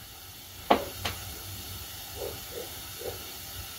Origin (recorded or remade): recorded